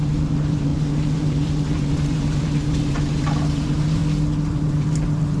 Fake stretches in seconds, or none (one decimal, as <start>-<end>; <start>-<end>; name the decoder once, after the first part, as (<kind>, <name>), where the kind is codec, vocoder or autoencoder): 0.0-4.0 (vocoder, BigVGAN v2); 4.5-5.4

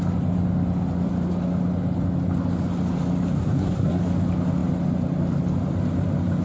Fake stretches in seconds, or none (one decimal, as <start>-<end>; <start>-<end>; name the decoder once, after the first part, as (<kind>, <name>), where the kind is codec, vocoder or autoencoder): 3.4-4.0 (codec, SNAC)

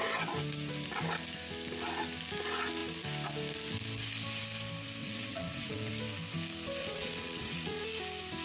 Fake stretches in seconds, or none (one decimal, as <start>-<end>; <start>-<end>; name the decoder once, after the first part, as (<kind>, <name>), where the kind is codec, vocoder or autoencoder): 5.0-5.9 (vocoder, WaveNeXt); 6.8-7.8

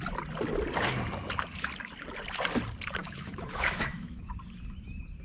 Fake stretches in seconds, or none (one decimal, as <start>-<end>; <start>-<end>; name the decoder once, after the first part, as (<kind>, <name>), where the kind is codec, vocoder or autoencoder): 3.0-4.3 (autoencoder, DAC-VAE)

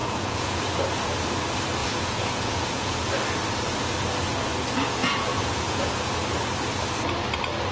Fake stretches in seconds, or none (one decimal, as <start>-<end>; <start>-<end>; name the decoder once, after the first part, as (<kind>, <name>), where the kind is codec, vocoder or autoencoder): 0.0-0.6 (vocoder, Vocos); 1.8-3.1; 5.0-6.0

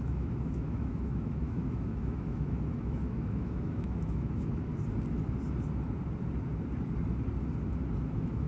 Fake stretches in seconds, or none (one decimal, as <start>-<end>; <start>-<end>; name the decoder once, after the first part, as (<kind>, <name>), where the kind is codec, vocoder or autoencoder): 0.0-4.7 (autoencoder, DAC-VAE); 8.1-8.5

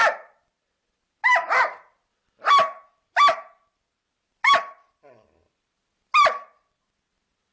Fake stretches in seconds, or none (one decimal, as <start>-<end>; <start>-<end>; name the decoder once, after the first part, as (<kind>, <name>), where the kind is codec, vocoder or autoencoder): none